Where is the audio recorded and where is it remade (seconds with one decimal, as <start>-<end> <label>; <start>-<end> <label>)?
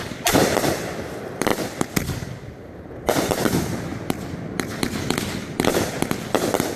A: 0.0-3.9 remade; 3.9-6.8 recorded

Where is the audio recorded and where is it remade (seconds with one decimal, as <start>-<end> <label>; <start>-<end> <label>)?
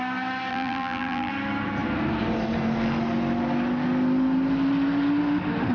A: 0.0-0.5 recorded; 0.5-1.3 remade; 1.3-5.7 recorded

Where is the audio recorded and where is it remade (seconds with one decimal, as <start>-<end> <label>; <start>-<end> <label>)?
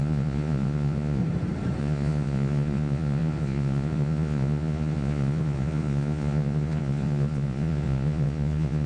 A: 0.0-1.2 remade; 1.2-1.8 recorded; 1.8-8.9 remade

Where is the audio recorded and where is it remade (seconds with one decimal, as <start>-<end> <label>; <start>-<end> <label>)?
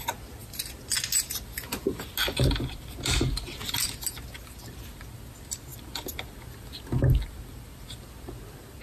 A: 0.0-8.8 recorded